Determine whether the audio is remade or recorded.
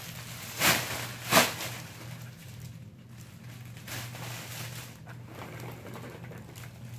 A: recorded